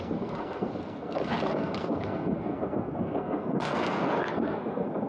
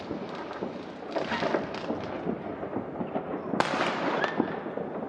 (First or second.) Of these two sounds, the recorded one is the second